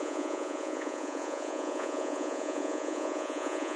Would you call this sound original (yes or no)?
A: no